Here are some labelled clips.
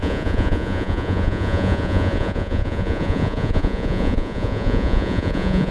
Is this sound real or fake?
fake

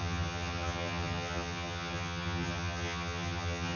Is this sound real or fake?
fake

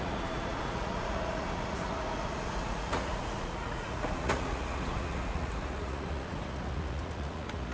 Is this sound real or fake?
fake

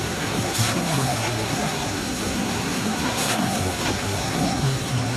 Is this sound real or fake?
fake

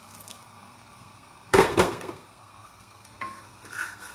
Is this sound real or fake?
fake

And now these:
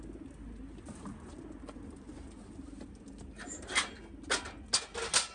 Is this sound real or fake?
real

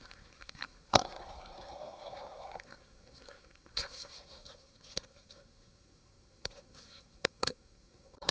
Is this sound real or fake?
fake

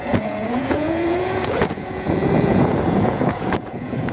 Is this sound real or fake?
fake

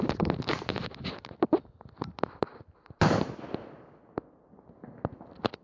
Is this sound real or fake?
real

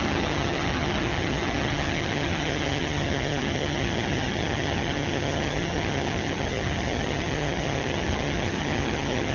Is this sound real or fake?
fake